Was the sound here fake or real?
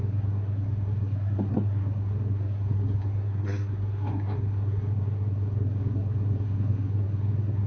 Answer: fake